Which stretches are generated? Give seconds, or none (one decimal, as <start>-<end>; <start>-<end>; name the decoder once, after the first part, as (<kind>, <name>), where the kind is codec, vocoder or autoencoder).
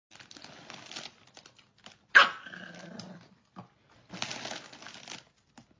none